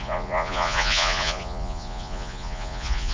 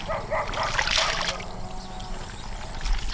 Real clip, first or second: second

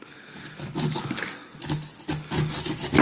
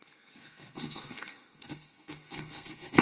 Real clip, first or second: first